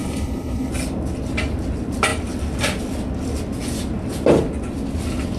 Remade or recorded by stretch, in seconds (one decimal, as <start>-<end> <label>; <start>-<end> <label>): 0.0-0.7 remade; 0.7-5.4 recorded

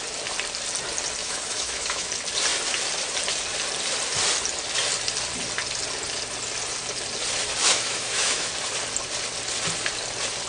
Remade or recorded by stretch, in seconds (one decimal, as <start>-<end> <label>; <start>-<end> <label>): 0.0-1.2 recorded; 1.2-2.1 remade; 2.1-7.6 recorded; 7.6-8.5 remade; 8.5-10.5 recorded

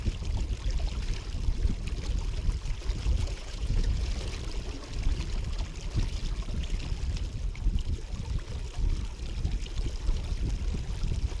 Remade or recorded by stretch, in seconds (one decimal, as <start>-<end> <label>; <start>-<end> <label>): 0.0-3.2 recorded; 3.2-4.1 remade; 4.1-11.4 recorded